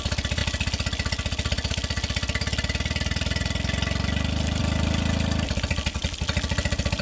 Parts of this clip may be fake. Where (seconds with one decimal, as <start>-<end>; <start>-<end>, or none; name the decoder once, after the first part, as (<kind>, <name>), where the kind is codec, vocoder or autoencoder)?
none